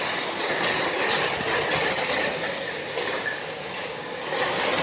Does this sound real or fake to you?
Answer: real